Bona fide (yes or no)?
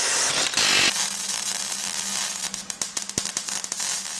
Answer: yes